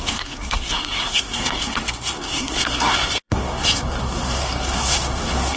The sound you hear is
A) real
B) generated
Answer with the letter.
B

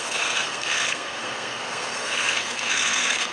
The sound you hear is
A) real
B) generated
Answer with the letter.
B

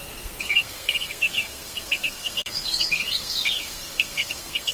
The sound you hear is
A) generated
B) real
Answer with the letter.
A